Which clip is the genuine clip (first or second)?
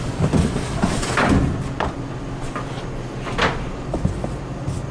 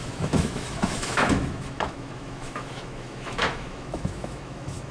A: first